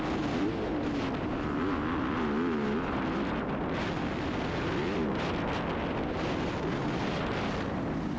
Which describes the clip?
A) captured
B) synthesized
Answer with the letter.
A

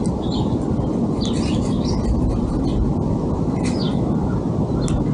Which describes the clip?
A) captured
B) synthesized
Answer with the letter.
A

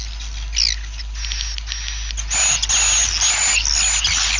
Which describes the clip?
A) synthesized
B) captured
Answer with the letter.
B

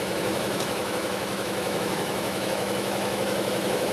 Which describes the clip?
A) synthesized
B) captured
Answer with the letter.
A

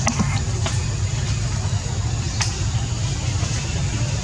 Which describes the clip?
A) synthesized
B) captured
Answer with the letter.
B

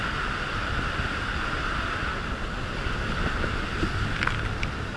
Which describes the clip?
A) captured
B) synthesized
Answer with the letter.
A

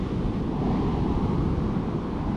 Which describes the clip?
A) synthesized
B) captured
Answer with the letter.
B